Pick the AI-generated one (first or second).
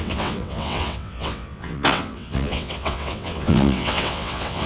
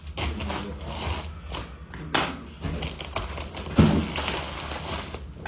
first